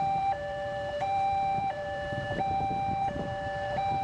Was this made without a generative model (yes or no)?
no